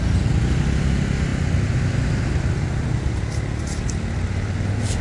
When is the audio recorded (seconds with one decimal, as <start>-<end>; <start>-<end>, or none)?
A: 0.0-5.0